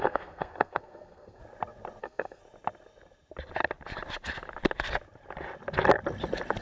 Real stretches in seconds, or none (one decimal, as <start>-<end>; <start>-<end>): 1.4-2.0; 2.4-6.6